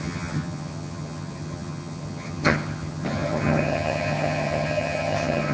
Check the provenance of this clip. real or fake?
fake